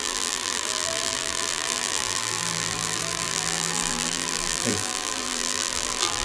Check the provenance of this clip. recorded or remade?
remade